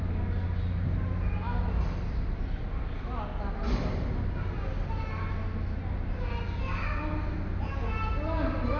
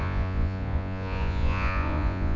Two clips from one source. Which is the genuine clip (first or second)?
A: first